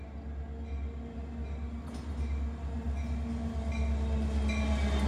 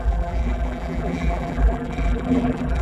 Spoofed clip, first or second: second